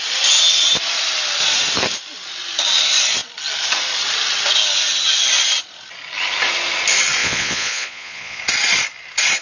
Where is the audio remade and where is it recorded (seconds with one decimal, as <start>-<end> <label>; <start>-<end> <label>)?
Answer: 0.0-7.2 recorded; 7.2-8.4 remade; 8.4-9.4 recorded